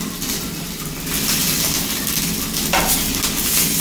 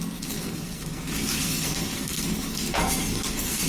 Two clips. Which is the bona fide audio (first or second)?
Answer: first